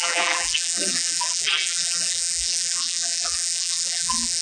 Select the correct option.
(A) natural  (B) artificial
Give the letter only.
B